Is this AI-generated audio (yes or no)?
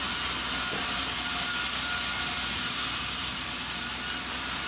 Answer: no